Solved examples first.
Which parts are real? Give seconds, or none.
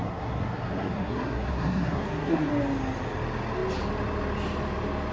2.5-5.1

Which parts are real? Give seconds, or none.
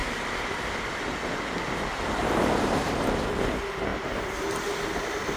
0.0-5.4